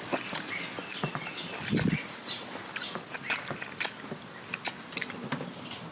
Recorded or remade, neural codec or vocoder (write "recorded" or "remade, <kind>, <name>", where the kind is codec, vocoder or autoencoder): recorded